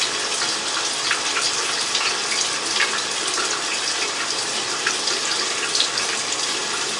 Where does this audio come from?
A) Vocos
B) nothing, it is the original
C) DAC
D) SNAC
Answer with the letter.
B